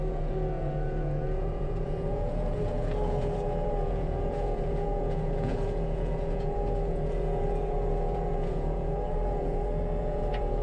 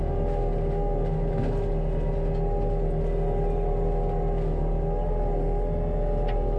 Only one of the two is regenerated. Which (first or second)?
first